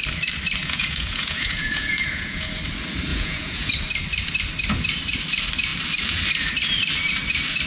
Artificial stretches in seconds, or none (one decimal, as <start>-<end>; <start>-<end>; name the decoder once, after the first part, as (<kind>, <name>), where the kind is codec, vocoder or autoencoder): 0.6-2.6 (vocoder, Vocos); 3.1-3.7